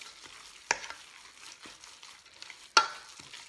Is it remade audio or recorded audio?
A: recorded